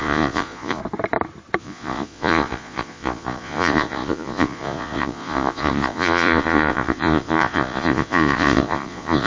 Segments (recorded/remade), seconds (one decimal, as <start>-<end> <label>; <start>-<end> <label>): 0.0-0.8 remade; 0.8-1.6 recorded; 1.6-9.3 remade